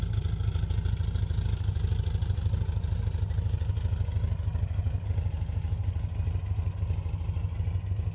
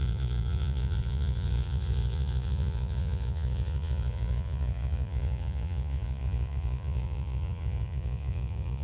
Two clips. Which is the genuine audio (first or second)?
first